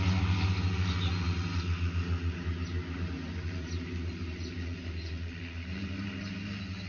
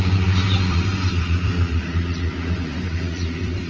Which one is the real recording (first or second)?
first